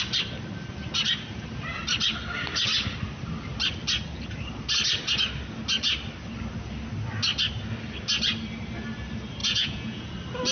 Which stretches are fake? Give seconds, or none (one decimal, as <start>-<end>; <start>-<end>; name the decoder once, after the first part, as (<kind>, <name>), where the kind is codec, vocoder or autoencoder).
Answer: 9.4-10.1 (vocoder, Vocos)